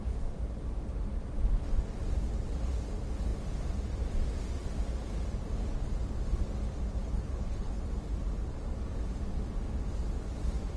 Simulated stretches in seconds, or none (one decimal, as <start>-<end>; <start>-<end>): 7.0-7.8